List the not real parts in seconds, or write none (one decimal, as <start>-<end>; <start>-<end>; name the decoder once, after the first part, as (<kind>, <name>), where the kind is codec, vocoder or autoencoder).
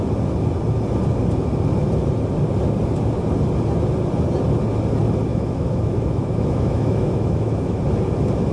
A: 5.3-7.8 (autoencoder, DAC-VAE)